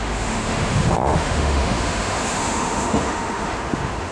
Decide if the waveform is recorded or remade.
remade